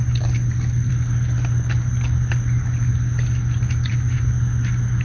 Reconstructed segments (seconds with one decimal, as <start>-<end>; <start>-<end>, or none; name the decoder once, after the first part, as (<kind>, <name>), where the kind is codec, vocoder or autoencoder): none